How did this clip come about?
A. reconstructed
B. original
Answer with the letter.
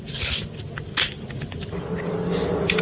B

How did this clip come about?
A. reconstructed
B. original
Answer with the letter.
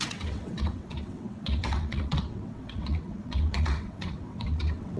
A